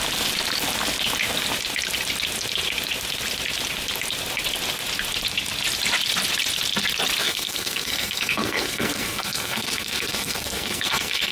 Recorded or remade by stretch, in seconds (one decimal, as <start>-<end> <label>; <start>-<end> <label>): 0.0-7.2 recorded; 7.2-11.3 remade